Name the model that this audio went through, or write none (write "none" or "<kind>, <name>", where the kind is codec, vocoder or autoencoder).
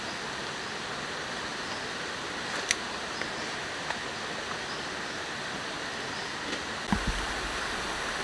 none